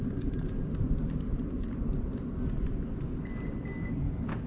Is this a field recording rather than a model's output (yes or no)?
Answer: yes